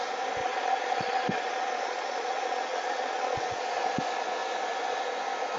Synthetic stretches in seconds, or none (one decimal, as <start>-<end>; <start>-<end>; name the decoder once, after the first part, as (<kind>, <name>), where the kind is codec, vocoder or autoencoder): 0.4-3.8 (vocoder, Vocos)